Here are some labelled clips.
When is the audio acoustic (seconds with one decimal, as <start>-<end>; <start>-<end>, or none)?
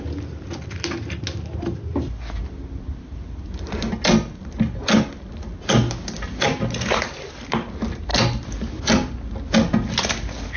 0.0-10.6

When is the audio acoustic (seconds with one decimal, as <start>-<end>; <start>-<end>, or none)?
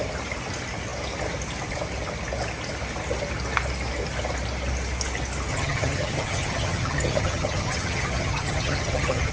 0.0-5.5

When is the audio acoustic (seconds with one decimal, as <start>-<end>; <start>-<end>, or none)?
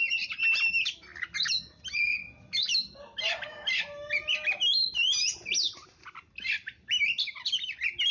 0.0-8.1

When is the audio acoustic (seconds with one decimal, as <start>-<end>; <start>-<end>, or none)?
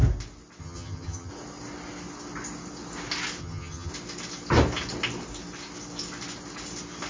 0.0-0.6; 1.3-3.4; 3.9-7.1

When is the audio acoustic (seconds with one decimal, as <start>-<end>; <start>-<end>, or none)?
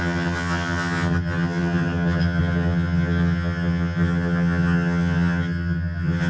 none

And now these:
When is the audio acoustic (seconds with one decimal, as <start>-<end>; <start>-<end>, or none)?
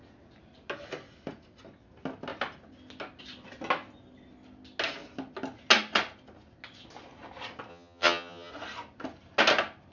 0.0-7.7; 8.5-9.9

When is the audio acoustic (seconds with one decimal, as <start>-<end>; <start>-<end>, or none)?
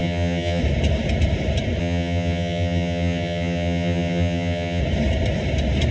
0.6-1.8; 4.8-5.9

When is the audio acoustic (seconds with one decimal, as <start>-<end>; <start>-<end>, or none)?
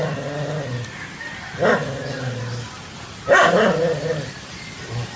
0.0-5.2